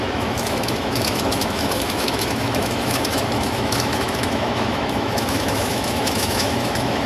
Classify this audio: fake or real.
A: fake